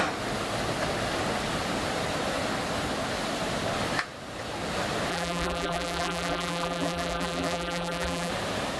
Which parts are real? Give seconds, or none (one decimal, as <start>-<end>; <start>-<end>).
0.0-5.1; 8.3-8.8